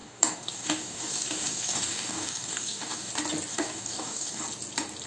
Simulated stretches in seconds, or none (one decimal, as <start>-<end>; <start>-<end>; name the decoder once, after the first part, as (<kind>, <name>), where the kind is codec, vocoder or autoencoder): 0.0-3.1 (codec, DAC); 3.5-4.4